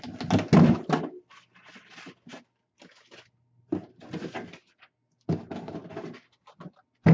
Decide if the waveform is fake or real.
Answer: real